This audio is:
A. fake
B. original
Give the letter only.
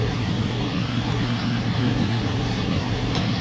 A